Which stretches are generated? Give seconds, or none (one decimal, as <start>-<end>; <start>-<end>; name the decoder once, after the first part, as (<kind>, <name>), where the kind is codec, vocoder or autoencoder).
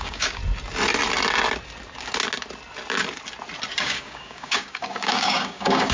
0.0-0.4 (codec, DAC); 3.8-5.9